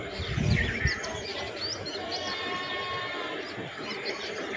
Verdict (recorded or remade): recorded